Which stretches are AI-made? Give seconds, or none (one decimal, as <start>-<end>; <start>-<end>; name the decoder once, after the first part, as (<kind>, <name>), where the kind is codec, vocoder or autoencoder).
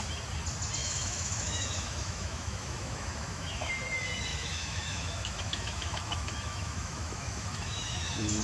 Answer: 0.8-3.7 (autoencoder, DAC-VAE); 4.3-8.4